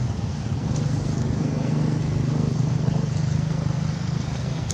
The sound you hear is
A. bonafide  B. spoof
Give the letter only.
B